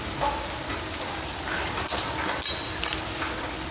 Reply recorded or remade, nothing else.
recorded